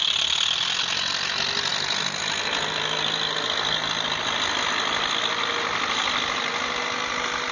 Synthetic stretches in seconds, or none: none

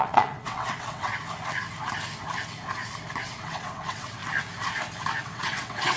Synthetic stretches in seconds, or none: 0.0-1.1 (vocoder, WaveNeXt); 3.2-4.2; 5.2-6.0

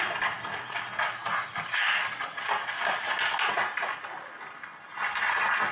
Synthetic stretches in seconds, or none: none

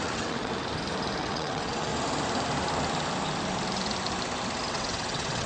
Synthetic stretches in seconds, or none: 0.0-0.5 (vocoder, WaveNeXt); 1.2-1.9; 4.7-5.5

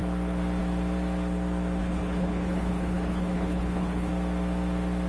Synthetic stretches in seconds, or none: 1.8-4.1 (codec, HILCodec)